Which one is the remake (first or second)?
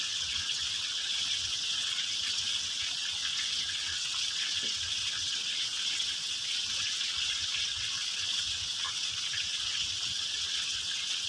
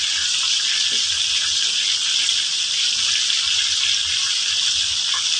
first